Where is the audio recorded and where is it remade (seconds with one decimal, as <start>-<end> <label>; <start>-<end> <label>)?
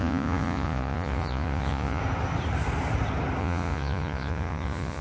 0.0-2.0 remade; 2.0-3.4 recorded; 3.4-5.0 remade